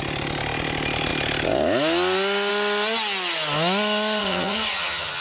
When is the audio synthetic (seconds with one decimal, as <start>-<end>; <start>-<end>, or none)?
4.2-5.2